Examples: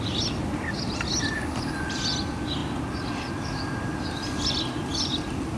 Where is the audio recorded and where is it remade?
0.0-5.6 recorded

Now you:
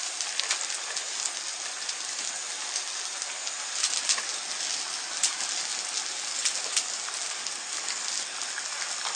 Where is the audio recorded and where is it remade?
0.0-9.2 recorded

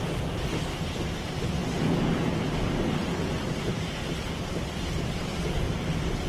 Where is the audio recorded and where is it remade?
0.0-6.3 recorded

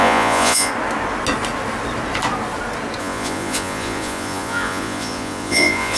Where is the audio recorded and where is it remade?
0.0-0.7 remade; 0.7-3.0 recorded; 3.0-6.0 remade